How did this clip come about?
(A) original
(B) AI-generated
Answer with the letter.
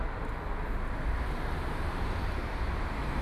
A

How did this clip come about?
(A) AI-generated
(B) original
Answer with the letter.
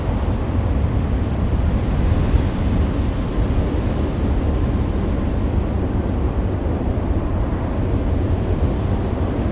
B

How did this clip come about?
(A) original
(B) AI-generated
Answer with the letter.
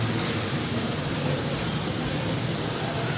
A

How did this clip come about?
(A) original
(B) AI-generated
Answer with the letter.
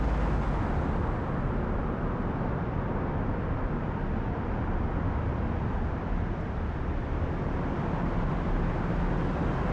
A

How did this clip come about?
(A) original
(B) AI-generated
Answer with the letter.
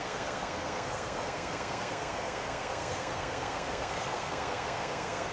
B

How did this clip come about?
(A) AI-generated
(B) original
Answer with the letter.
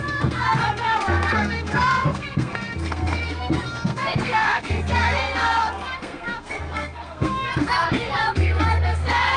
A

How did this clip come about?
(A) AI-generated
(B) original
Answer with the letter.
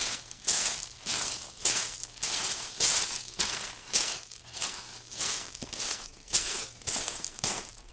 A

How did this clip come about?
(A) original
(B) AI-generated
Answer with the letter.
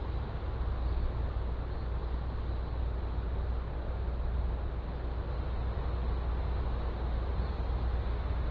A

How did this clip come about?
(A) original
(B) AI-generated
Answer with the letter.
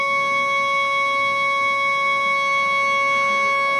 A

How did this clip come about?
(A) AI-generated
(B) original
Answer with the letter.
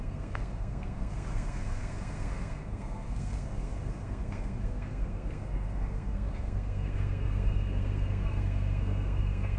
A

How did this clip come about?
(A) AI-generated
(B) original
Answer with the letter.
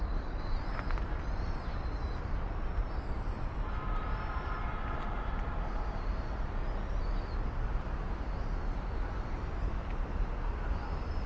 B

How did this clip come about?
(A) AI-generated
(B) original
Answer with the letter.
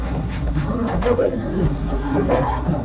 A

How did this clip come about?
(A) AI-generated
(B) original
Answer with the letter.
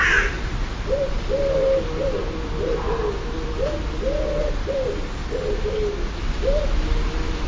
B